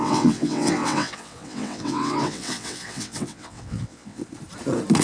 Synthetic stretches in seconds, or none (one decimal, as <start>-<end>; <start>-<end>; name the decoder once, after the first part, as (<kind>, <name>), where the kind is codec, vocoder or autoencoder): 0.0-4.2 (vocoder, WaveNeXt)